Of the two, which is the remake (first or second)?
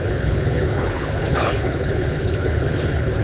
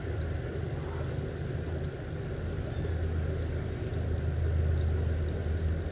first